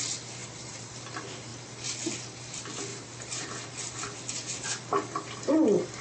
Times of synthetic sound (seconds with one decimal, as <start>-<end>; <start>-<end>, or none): 0.4-0.9; 2.9-3.5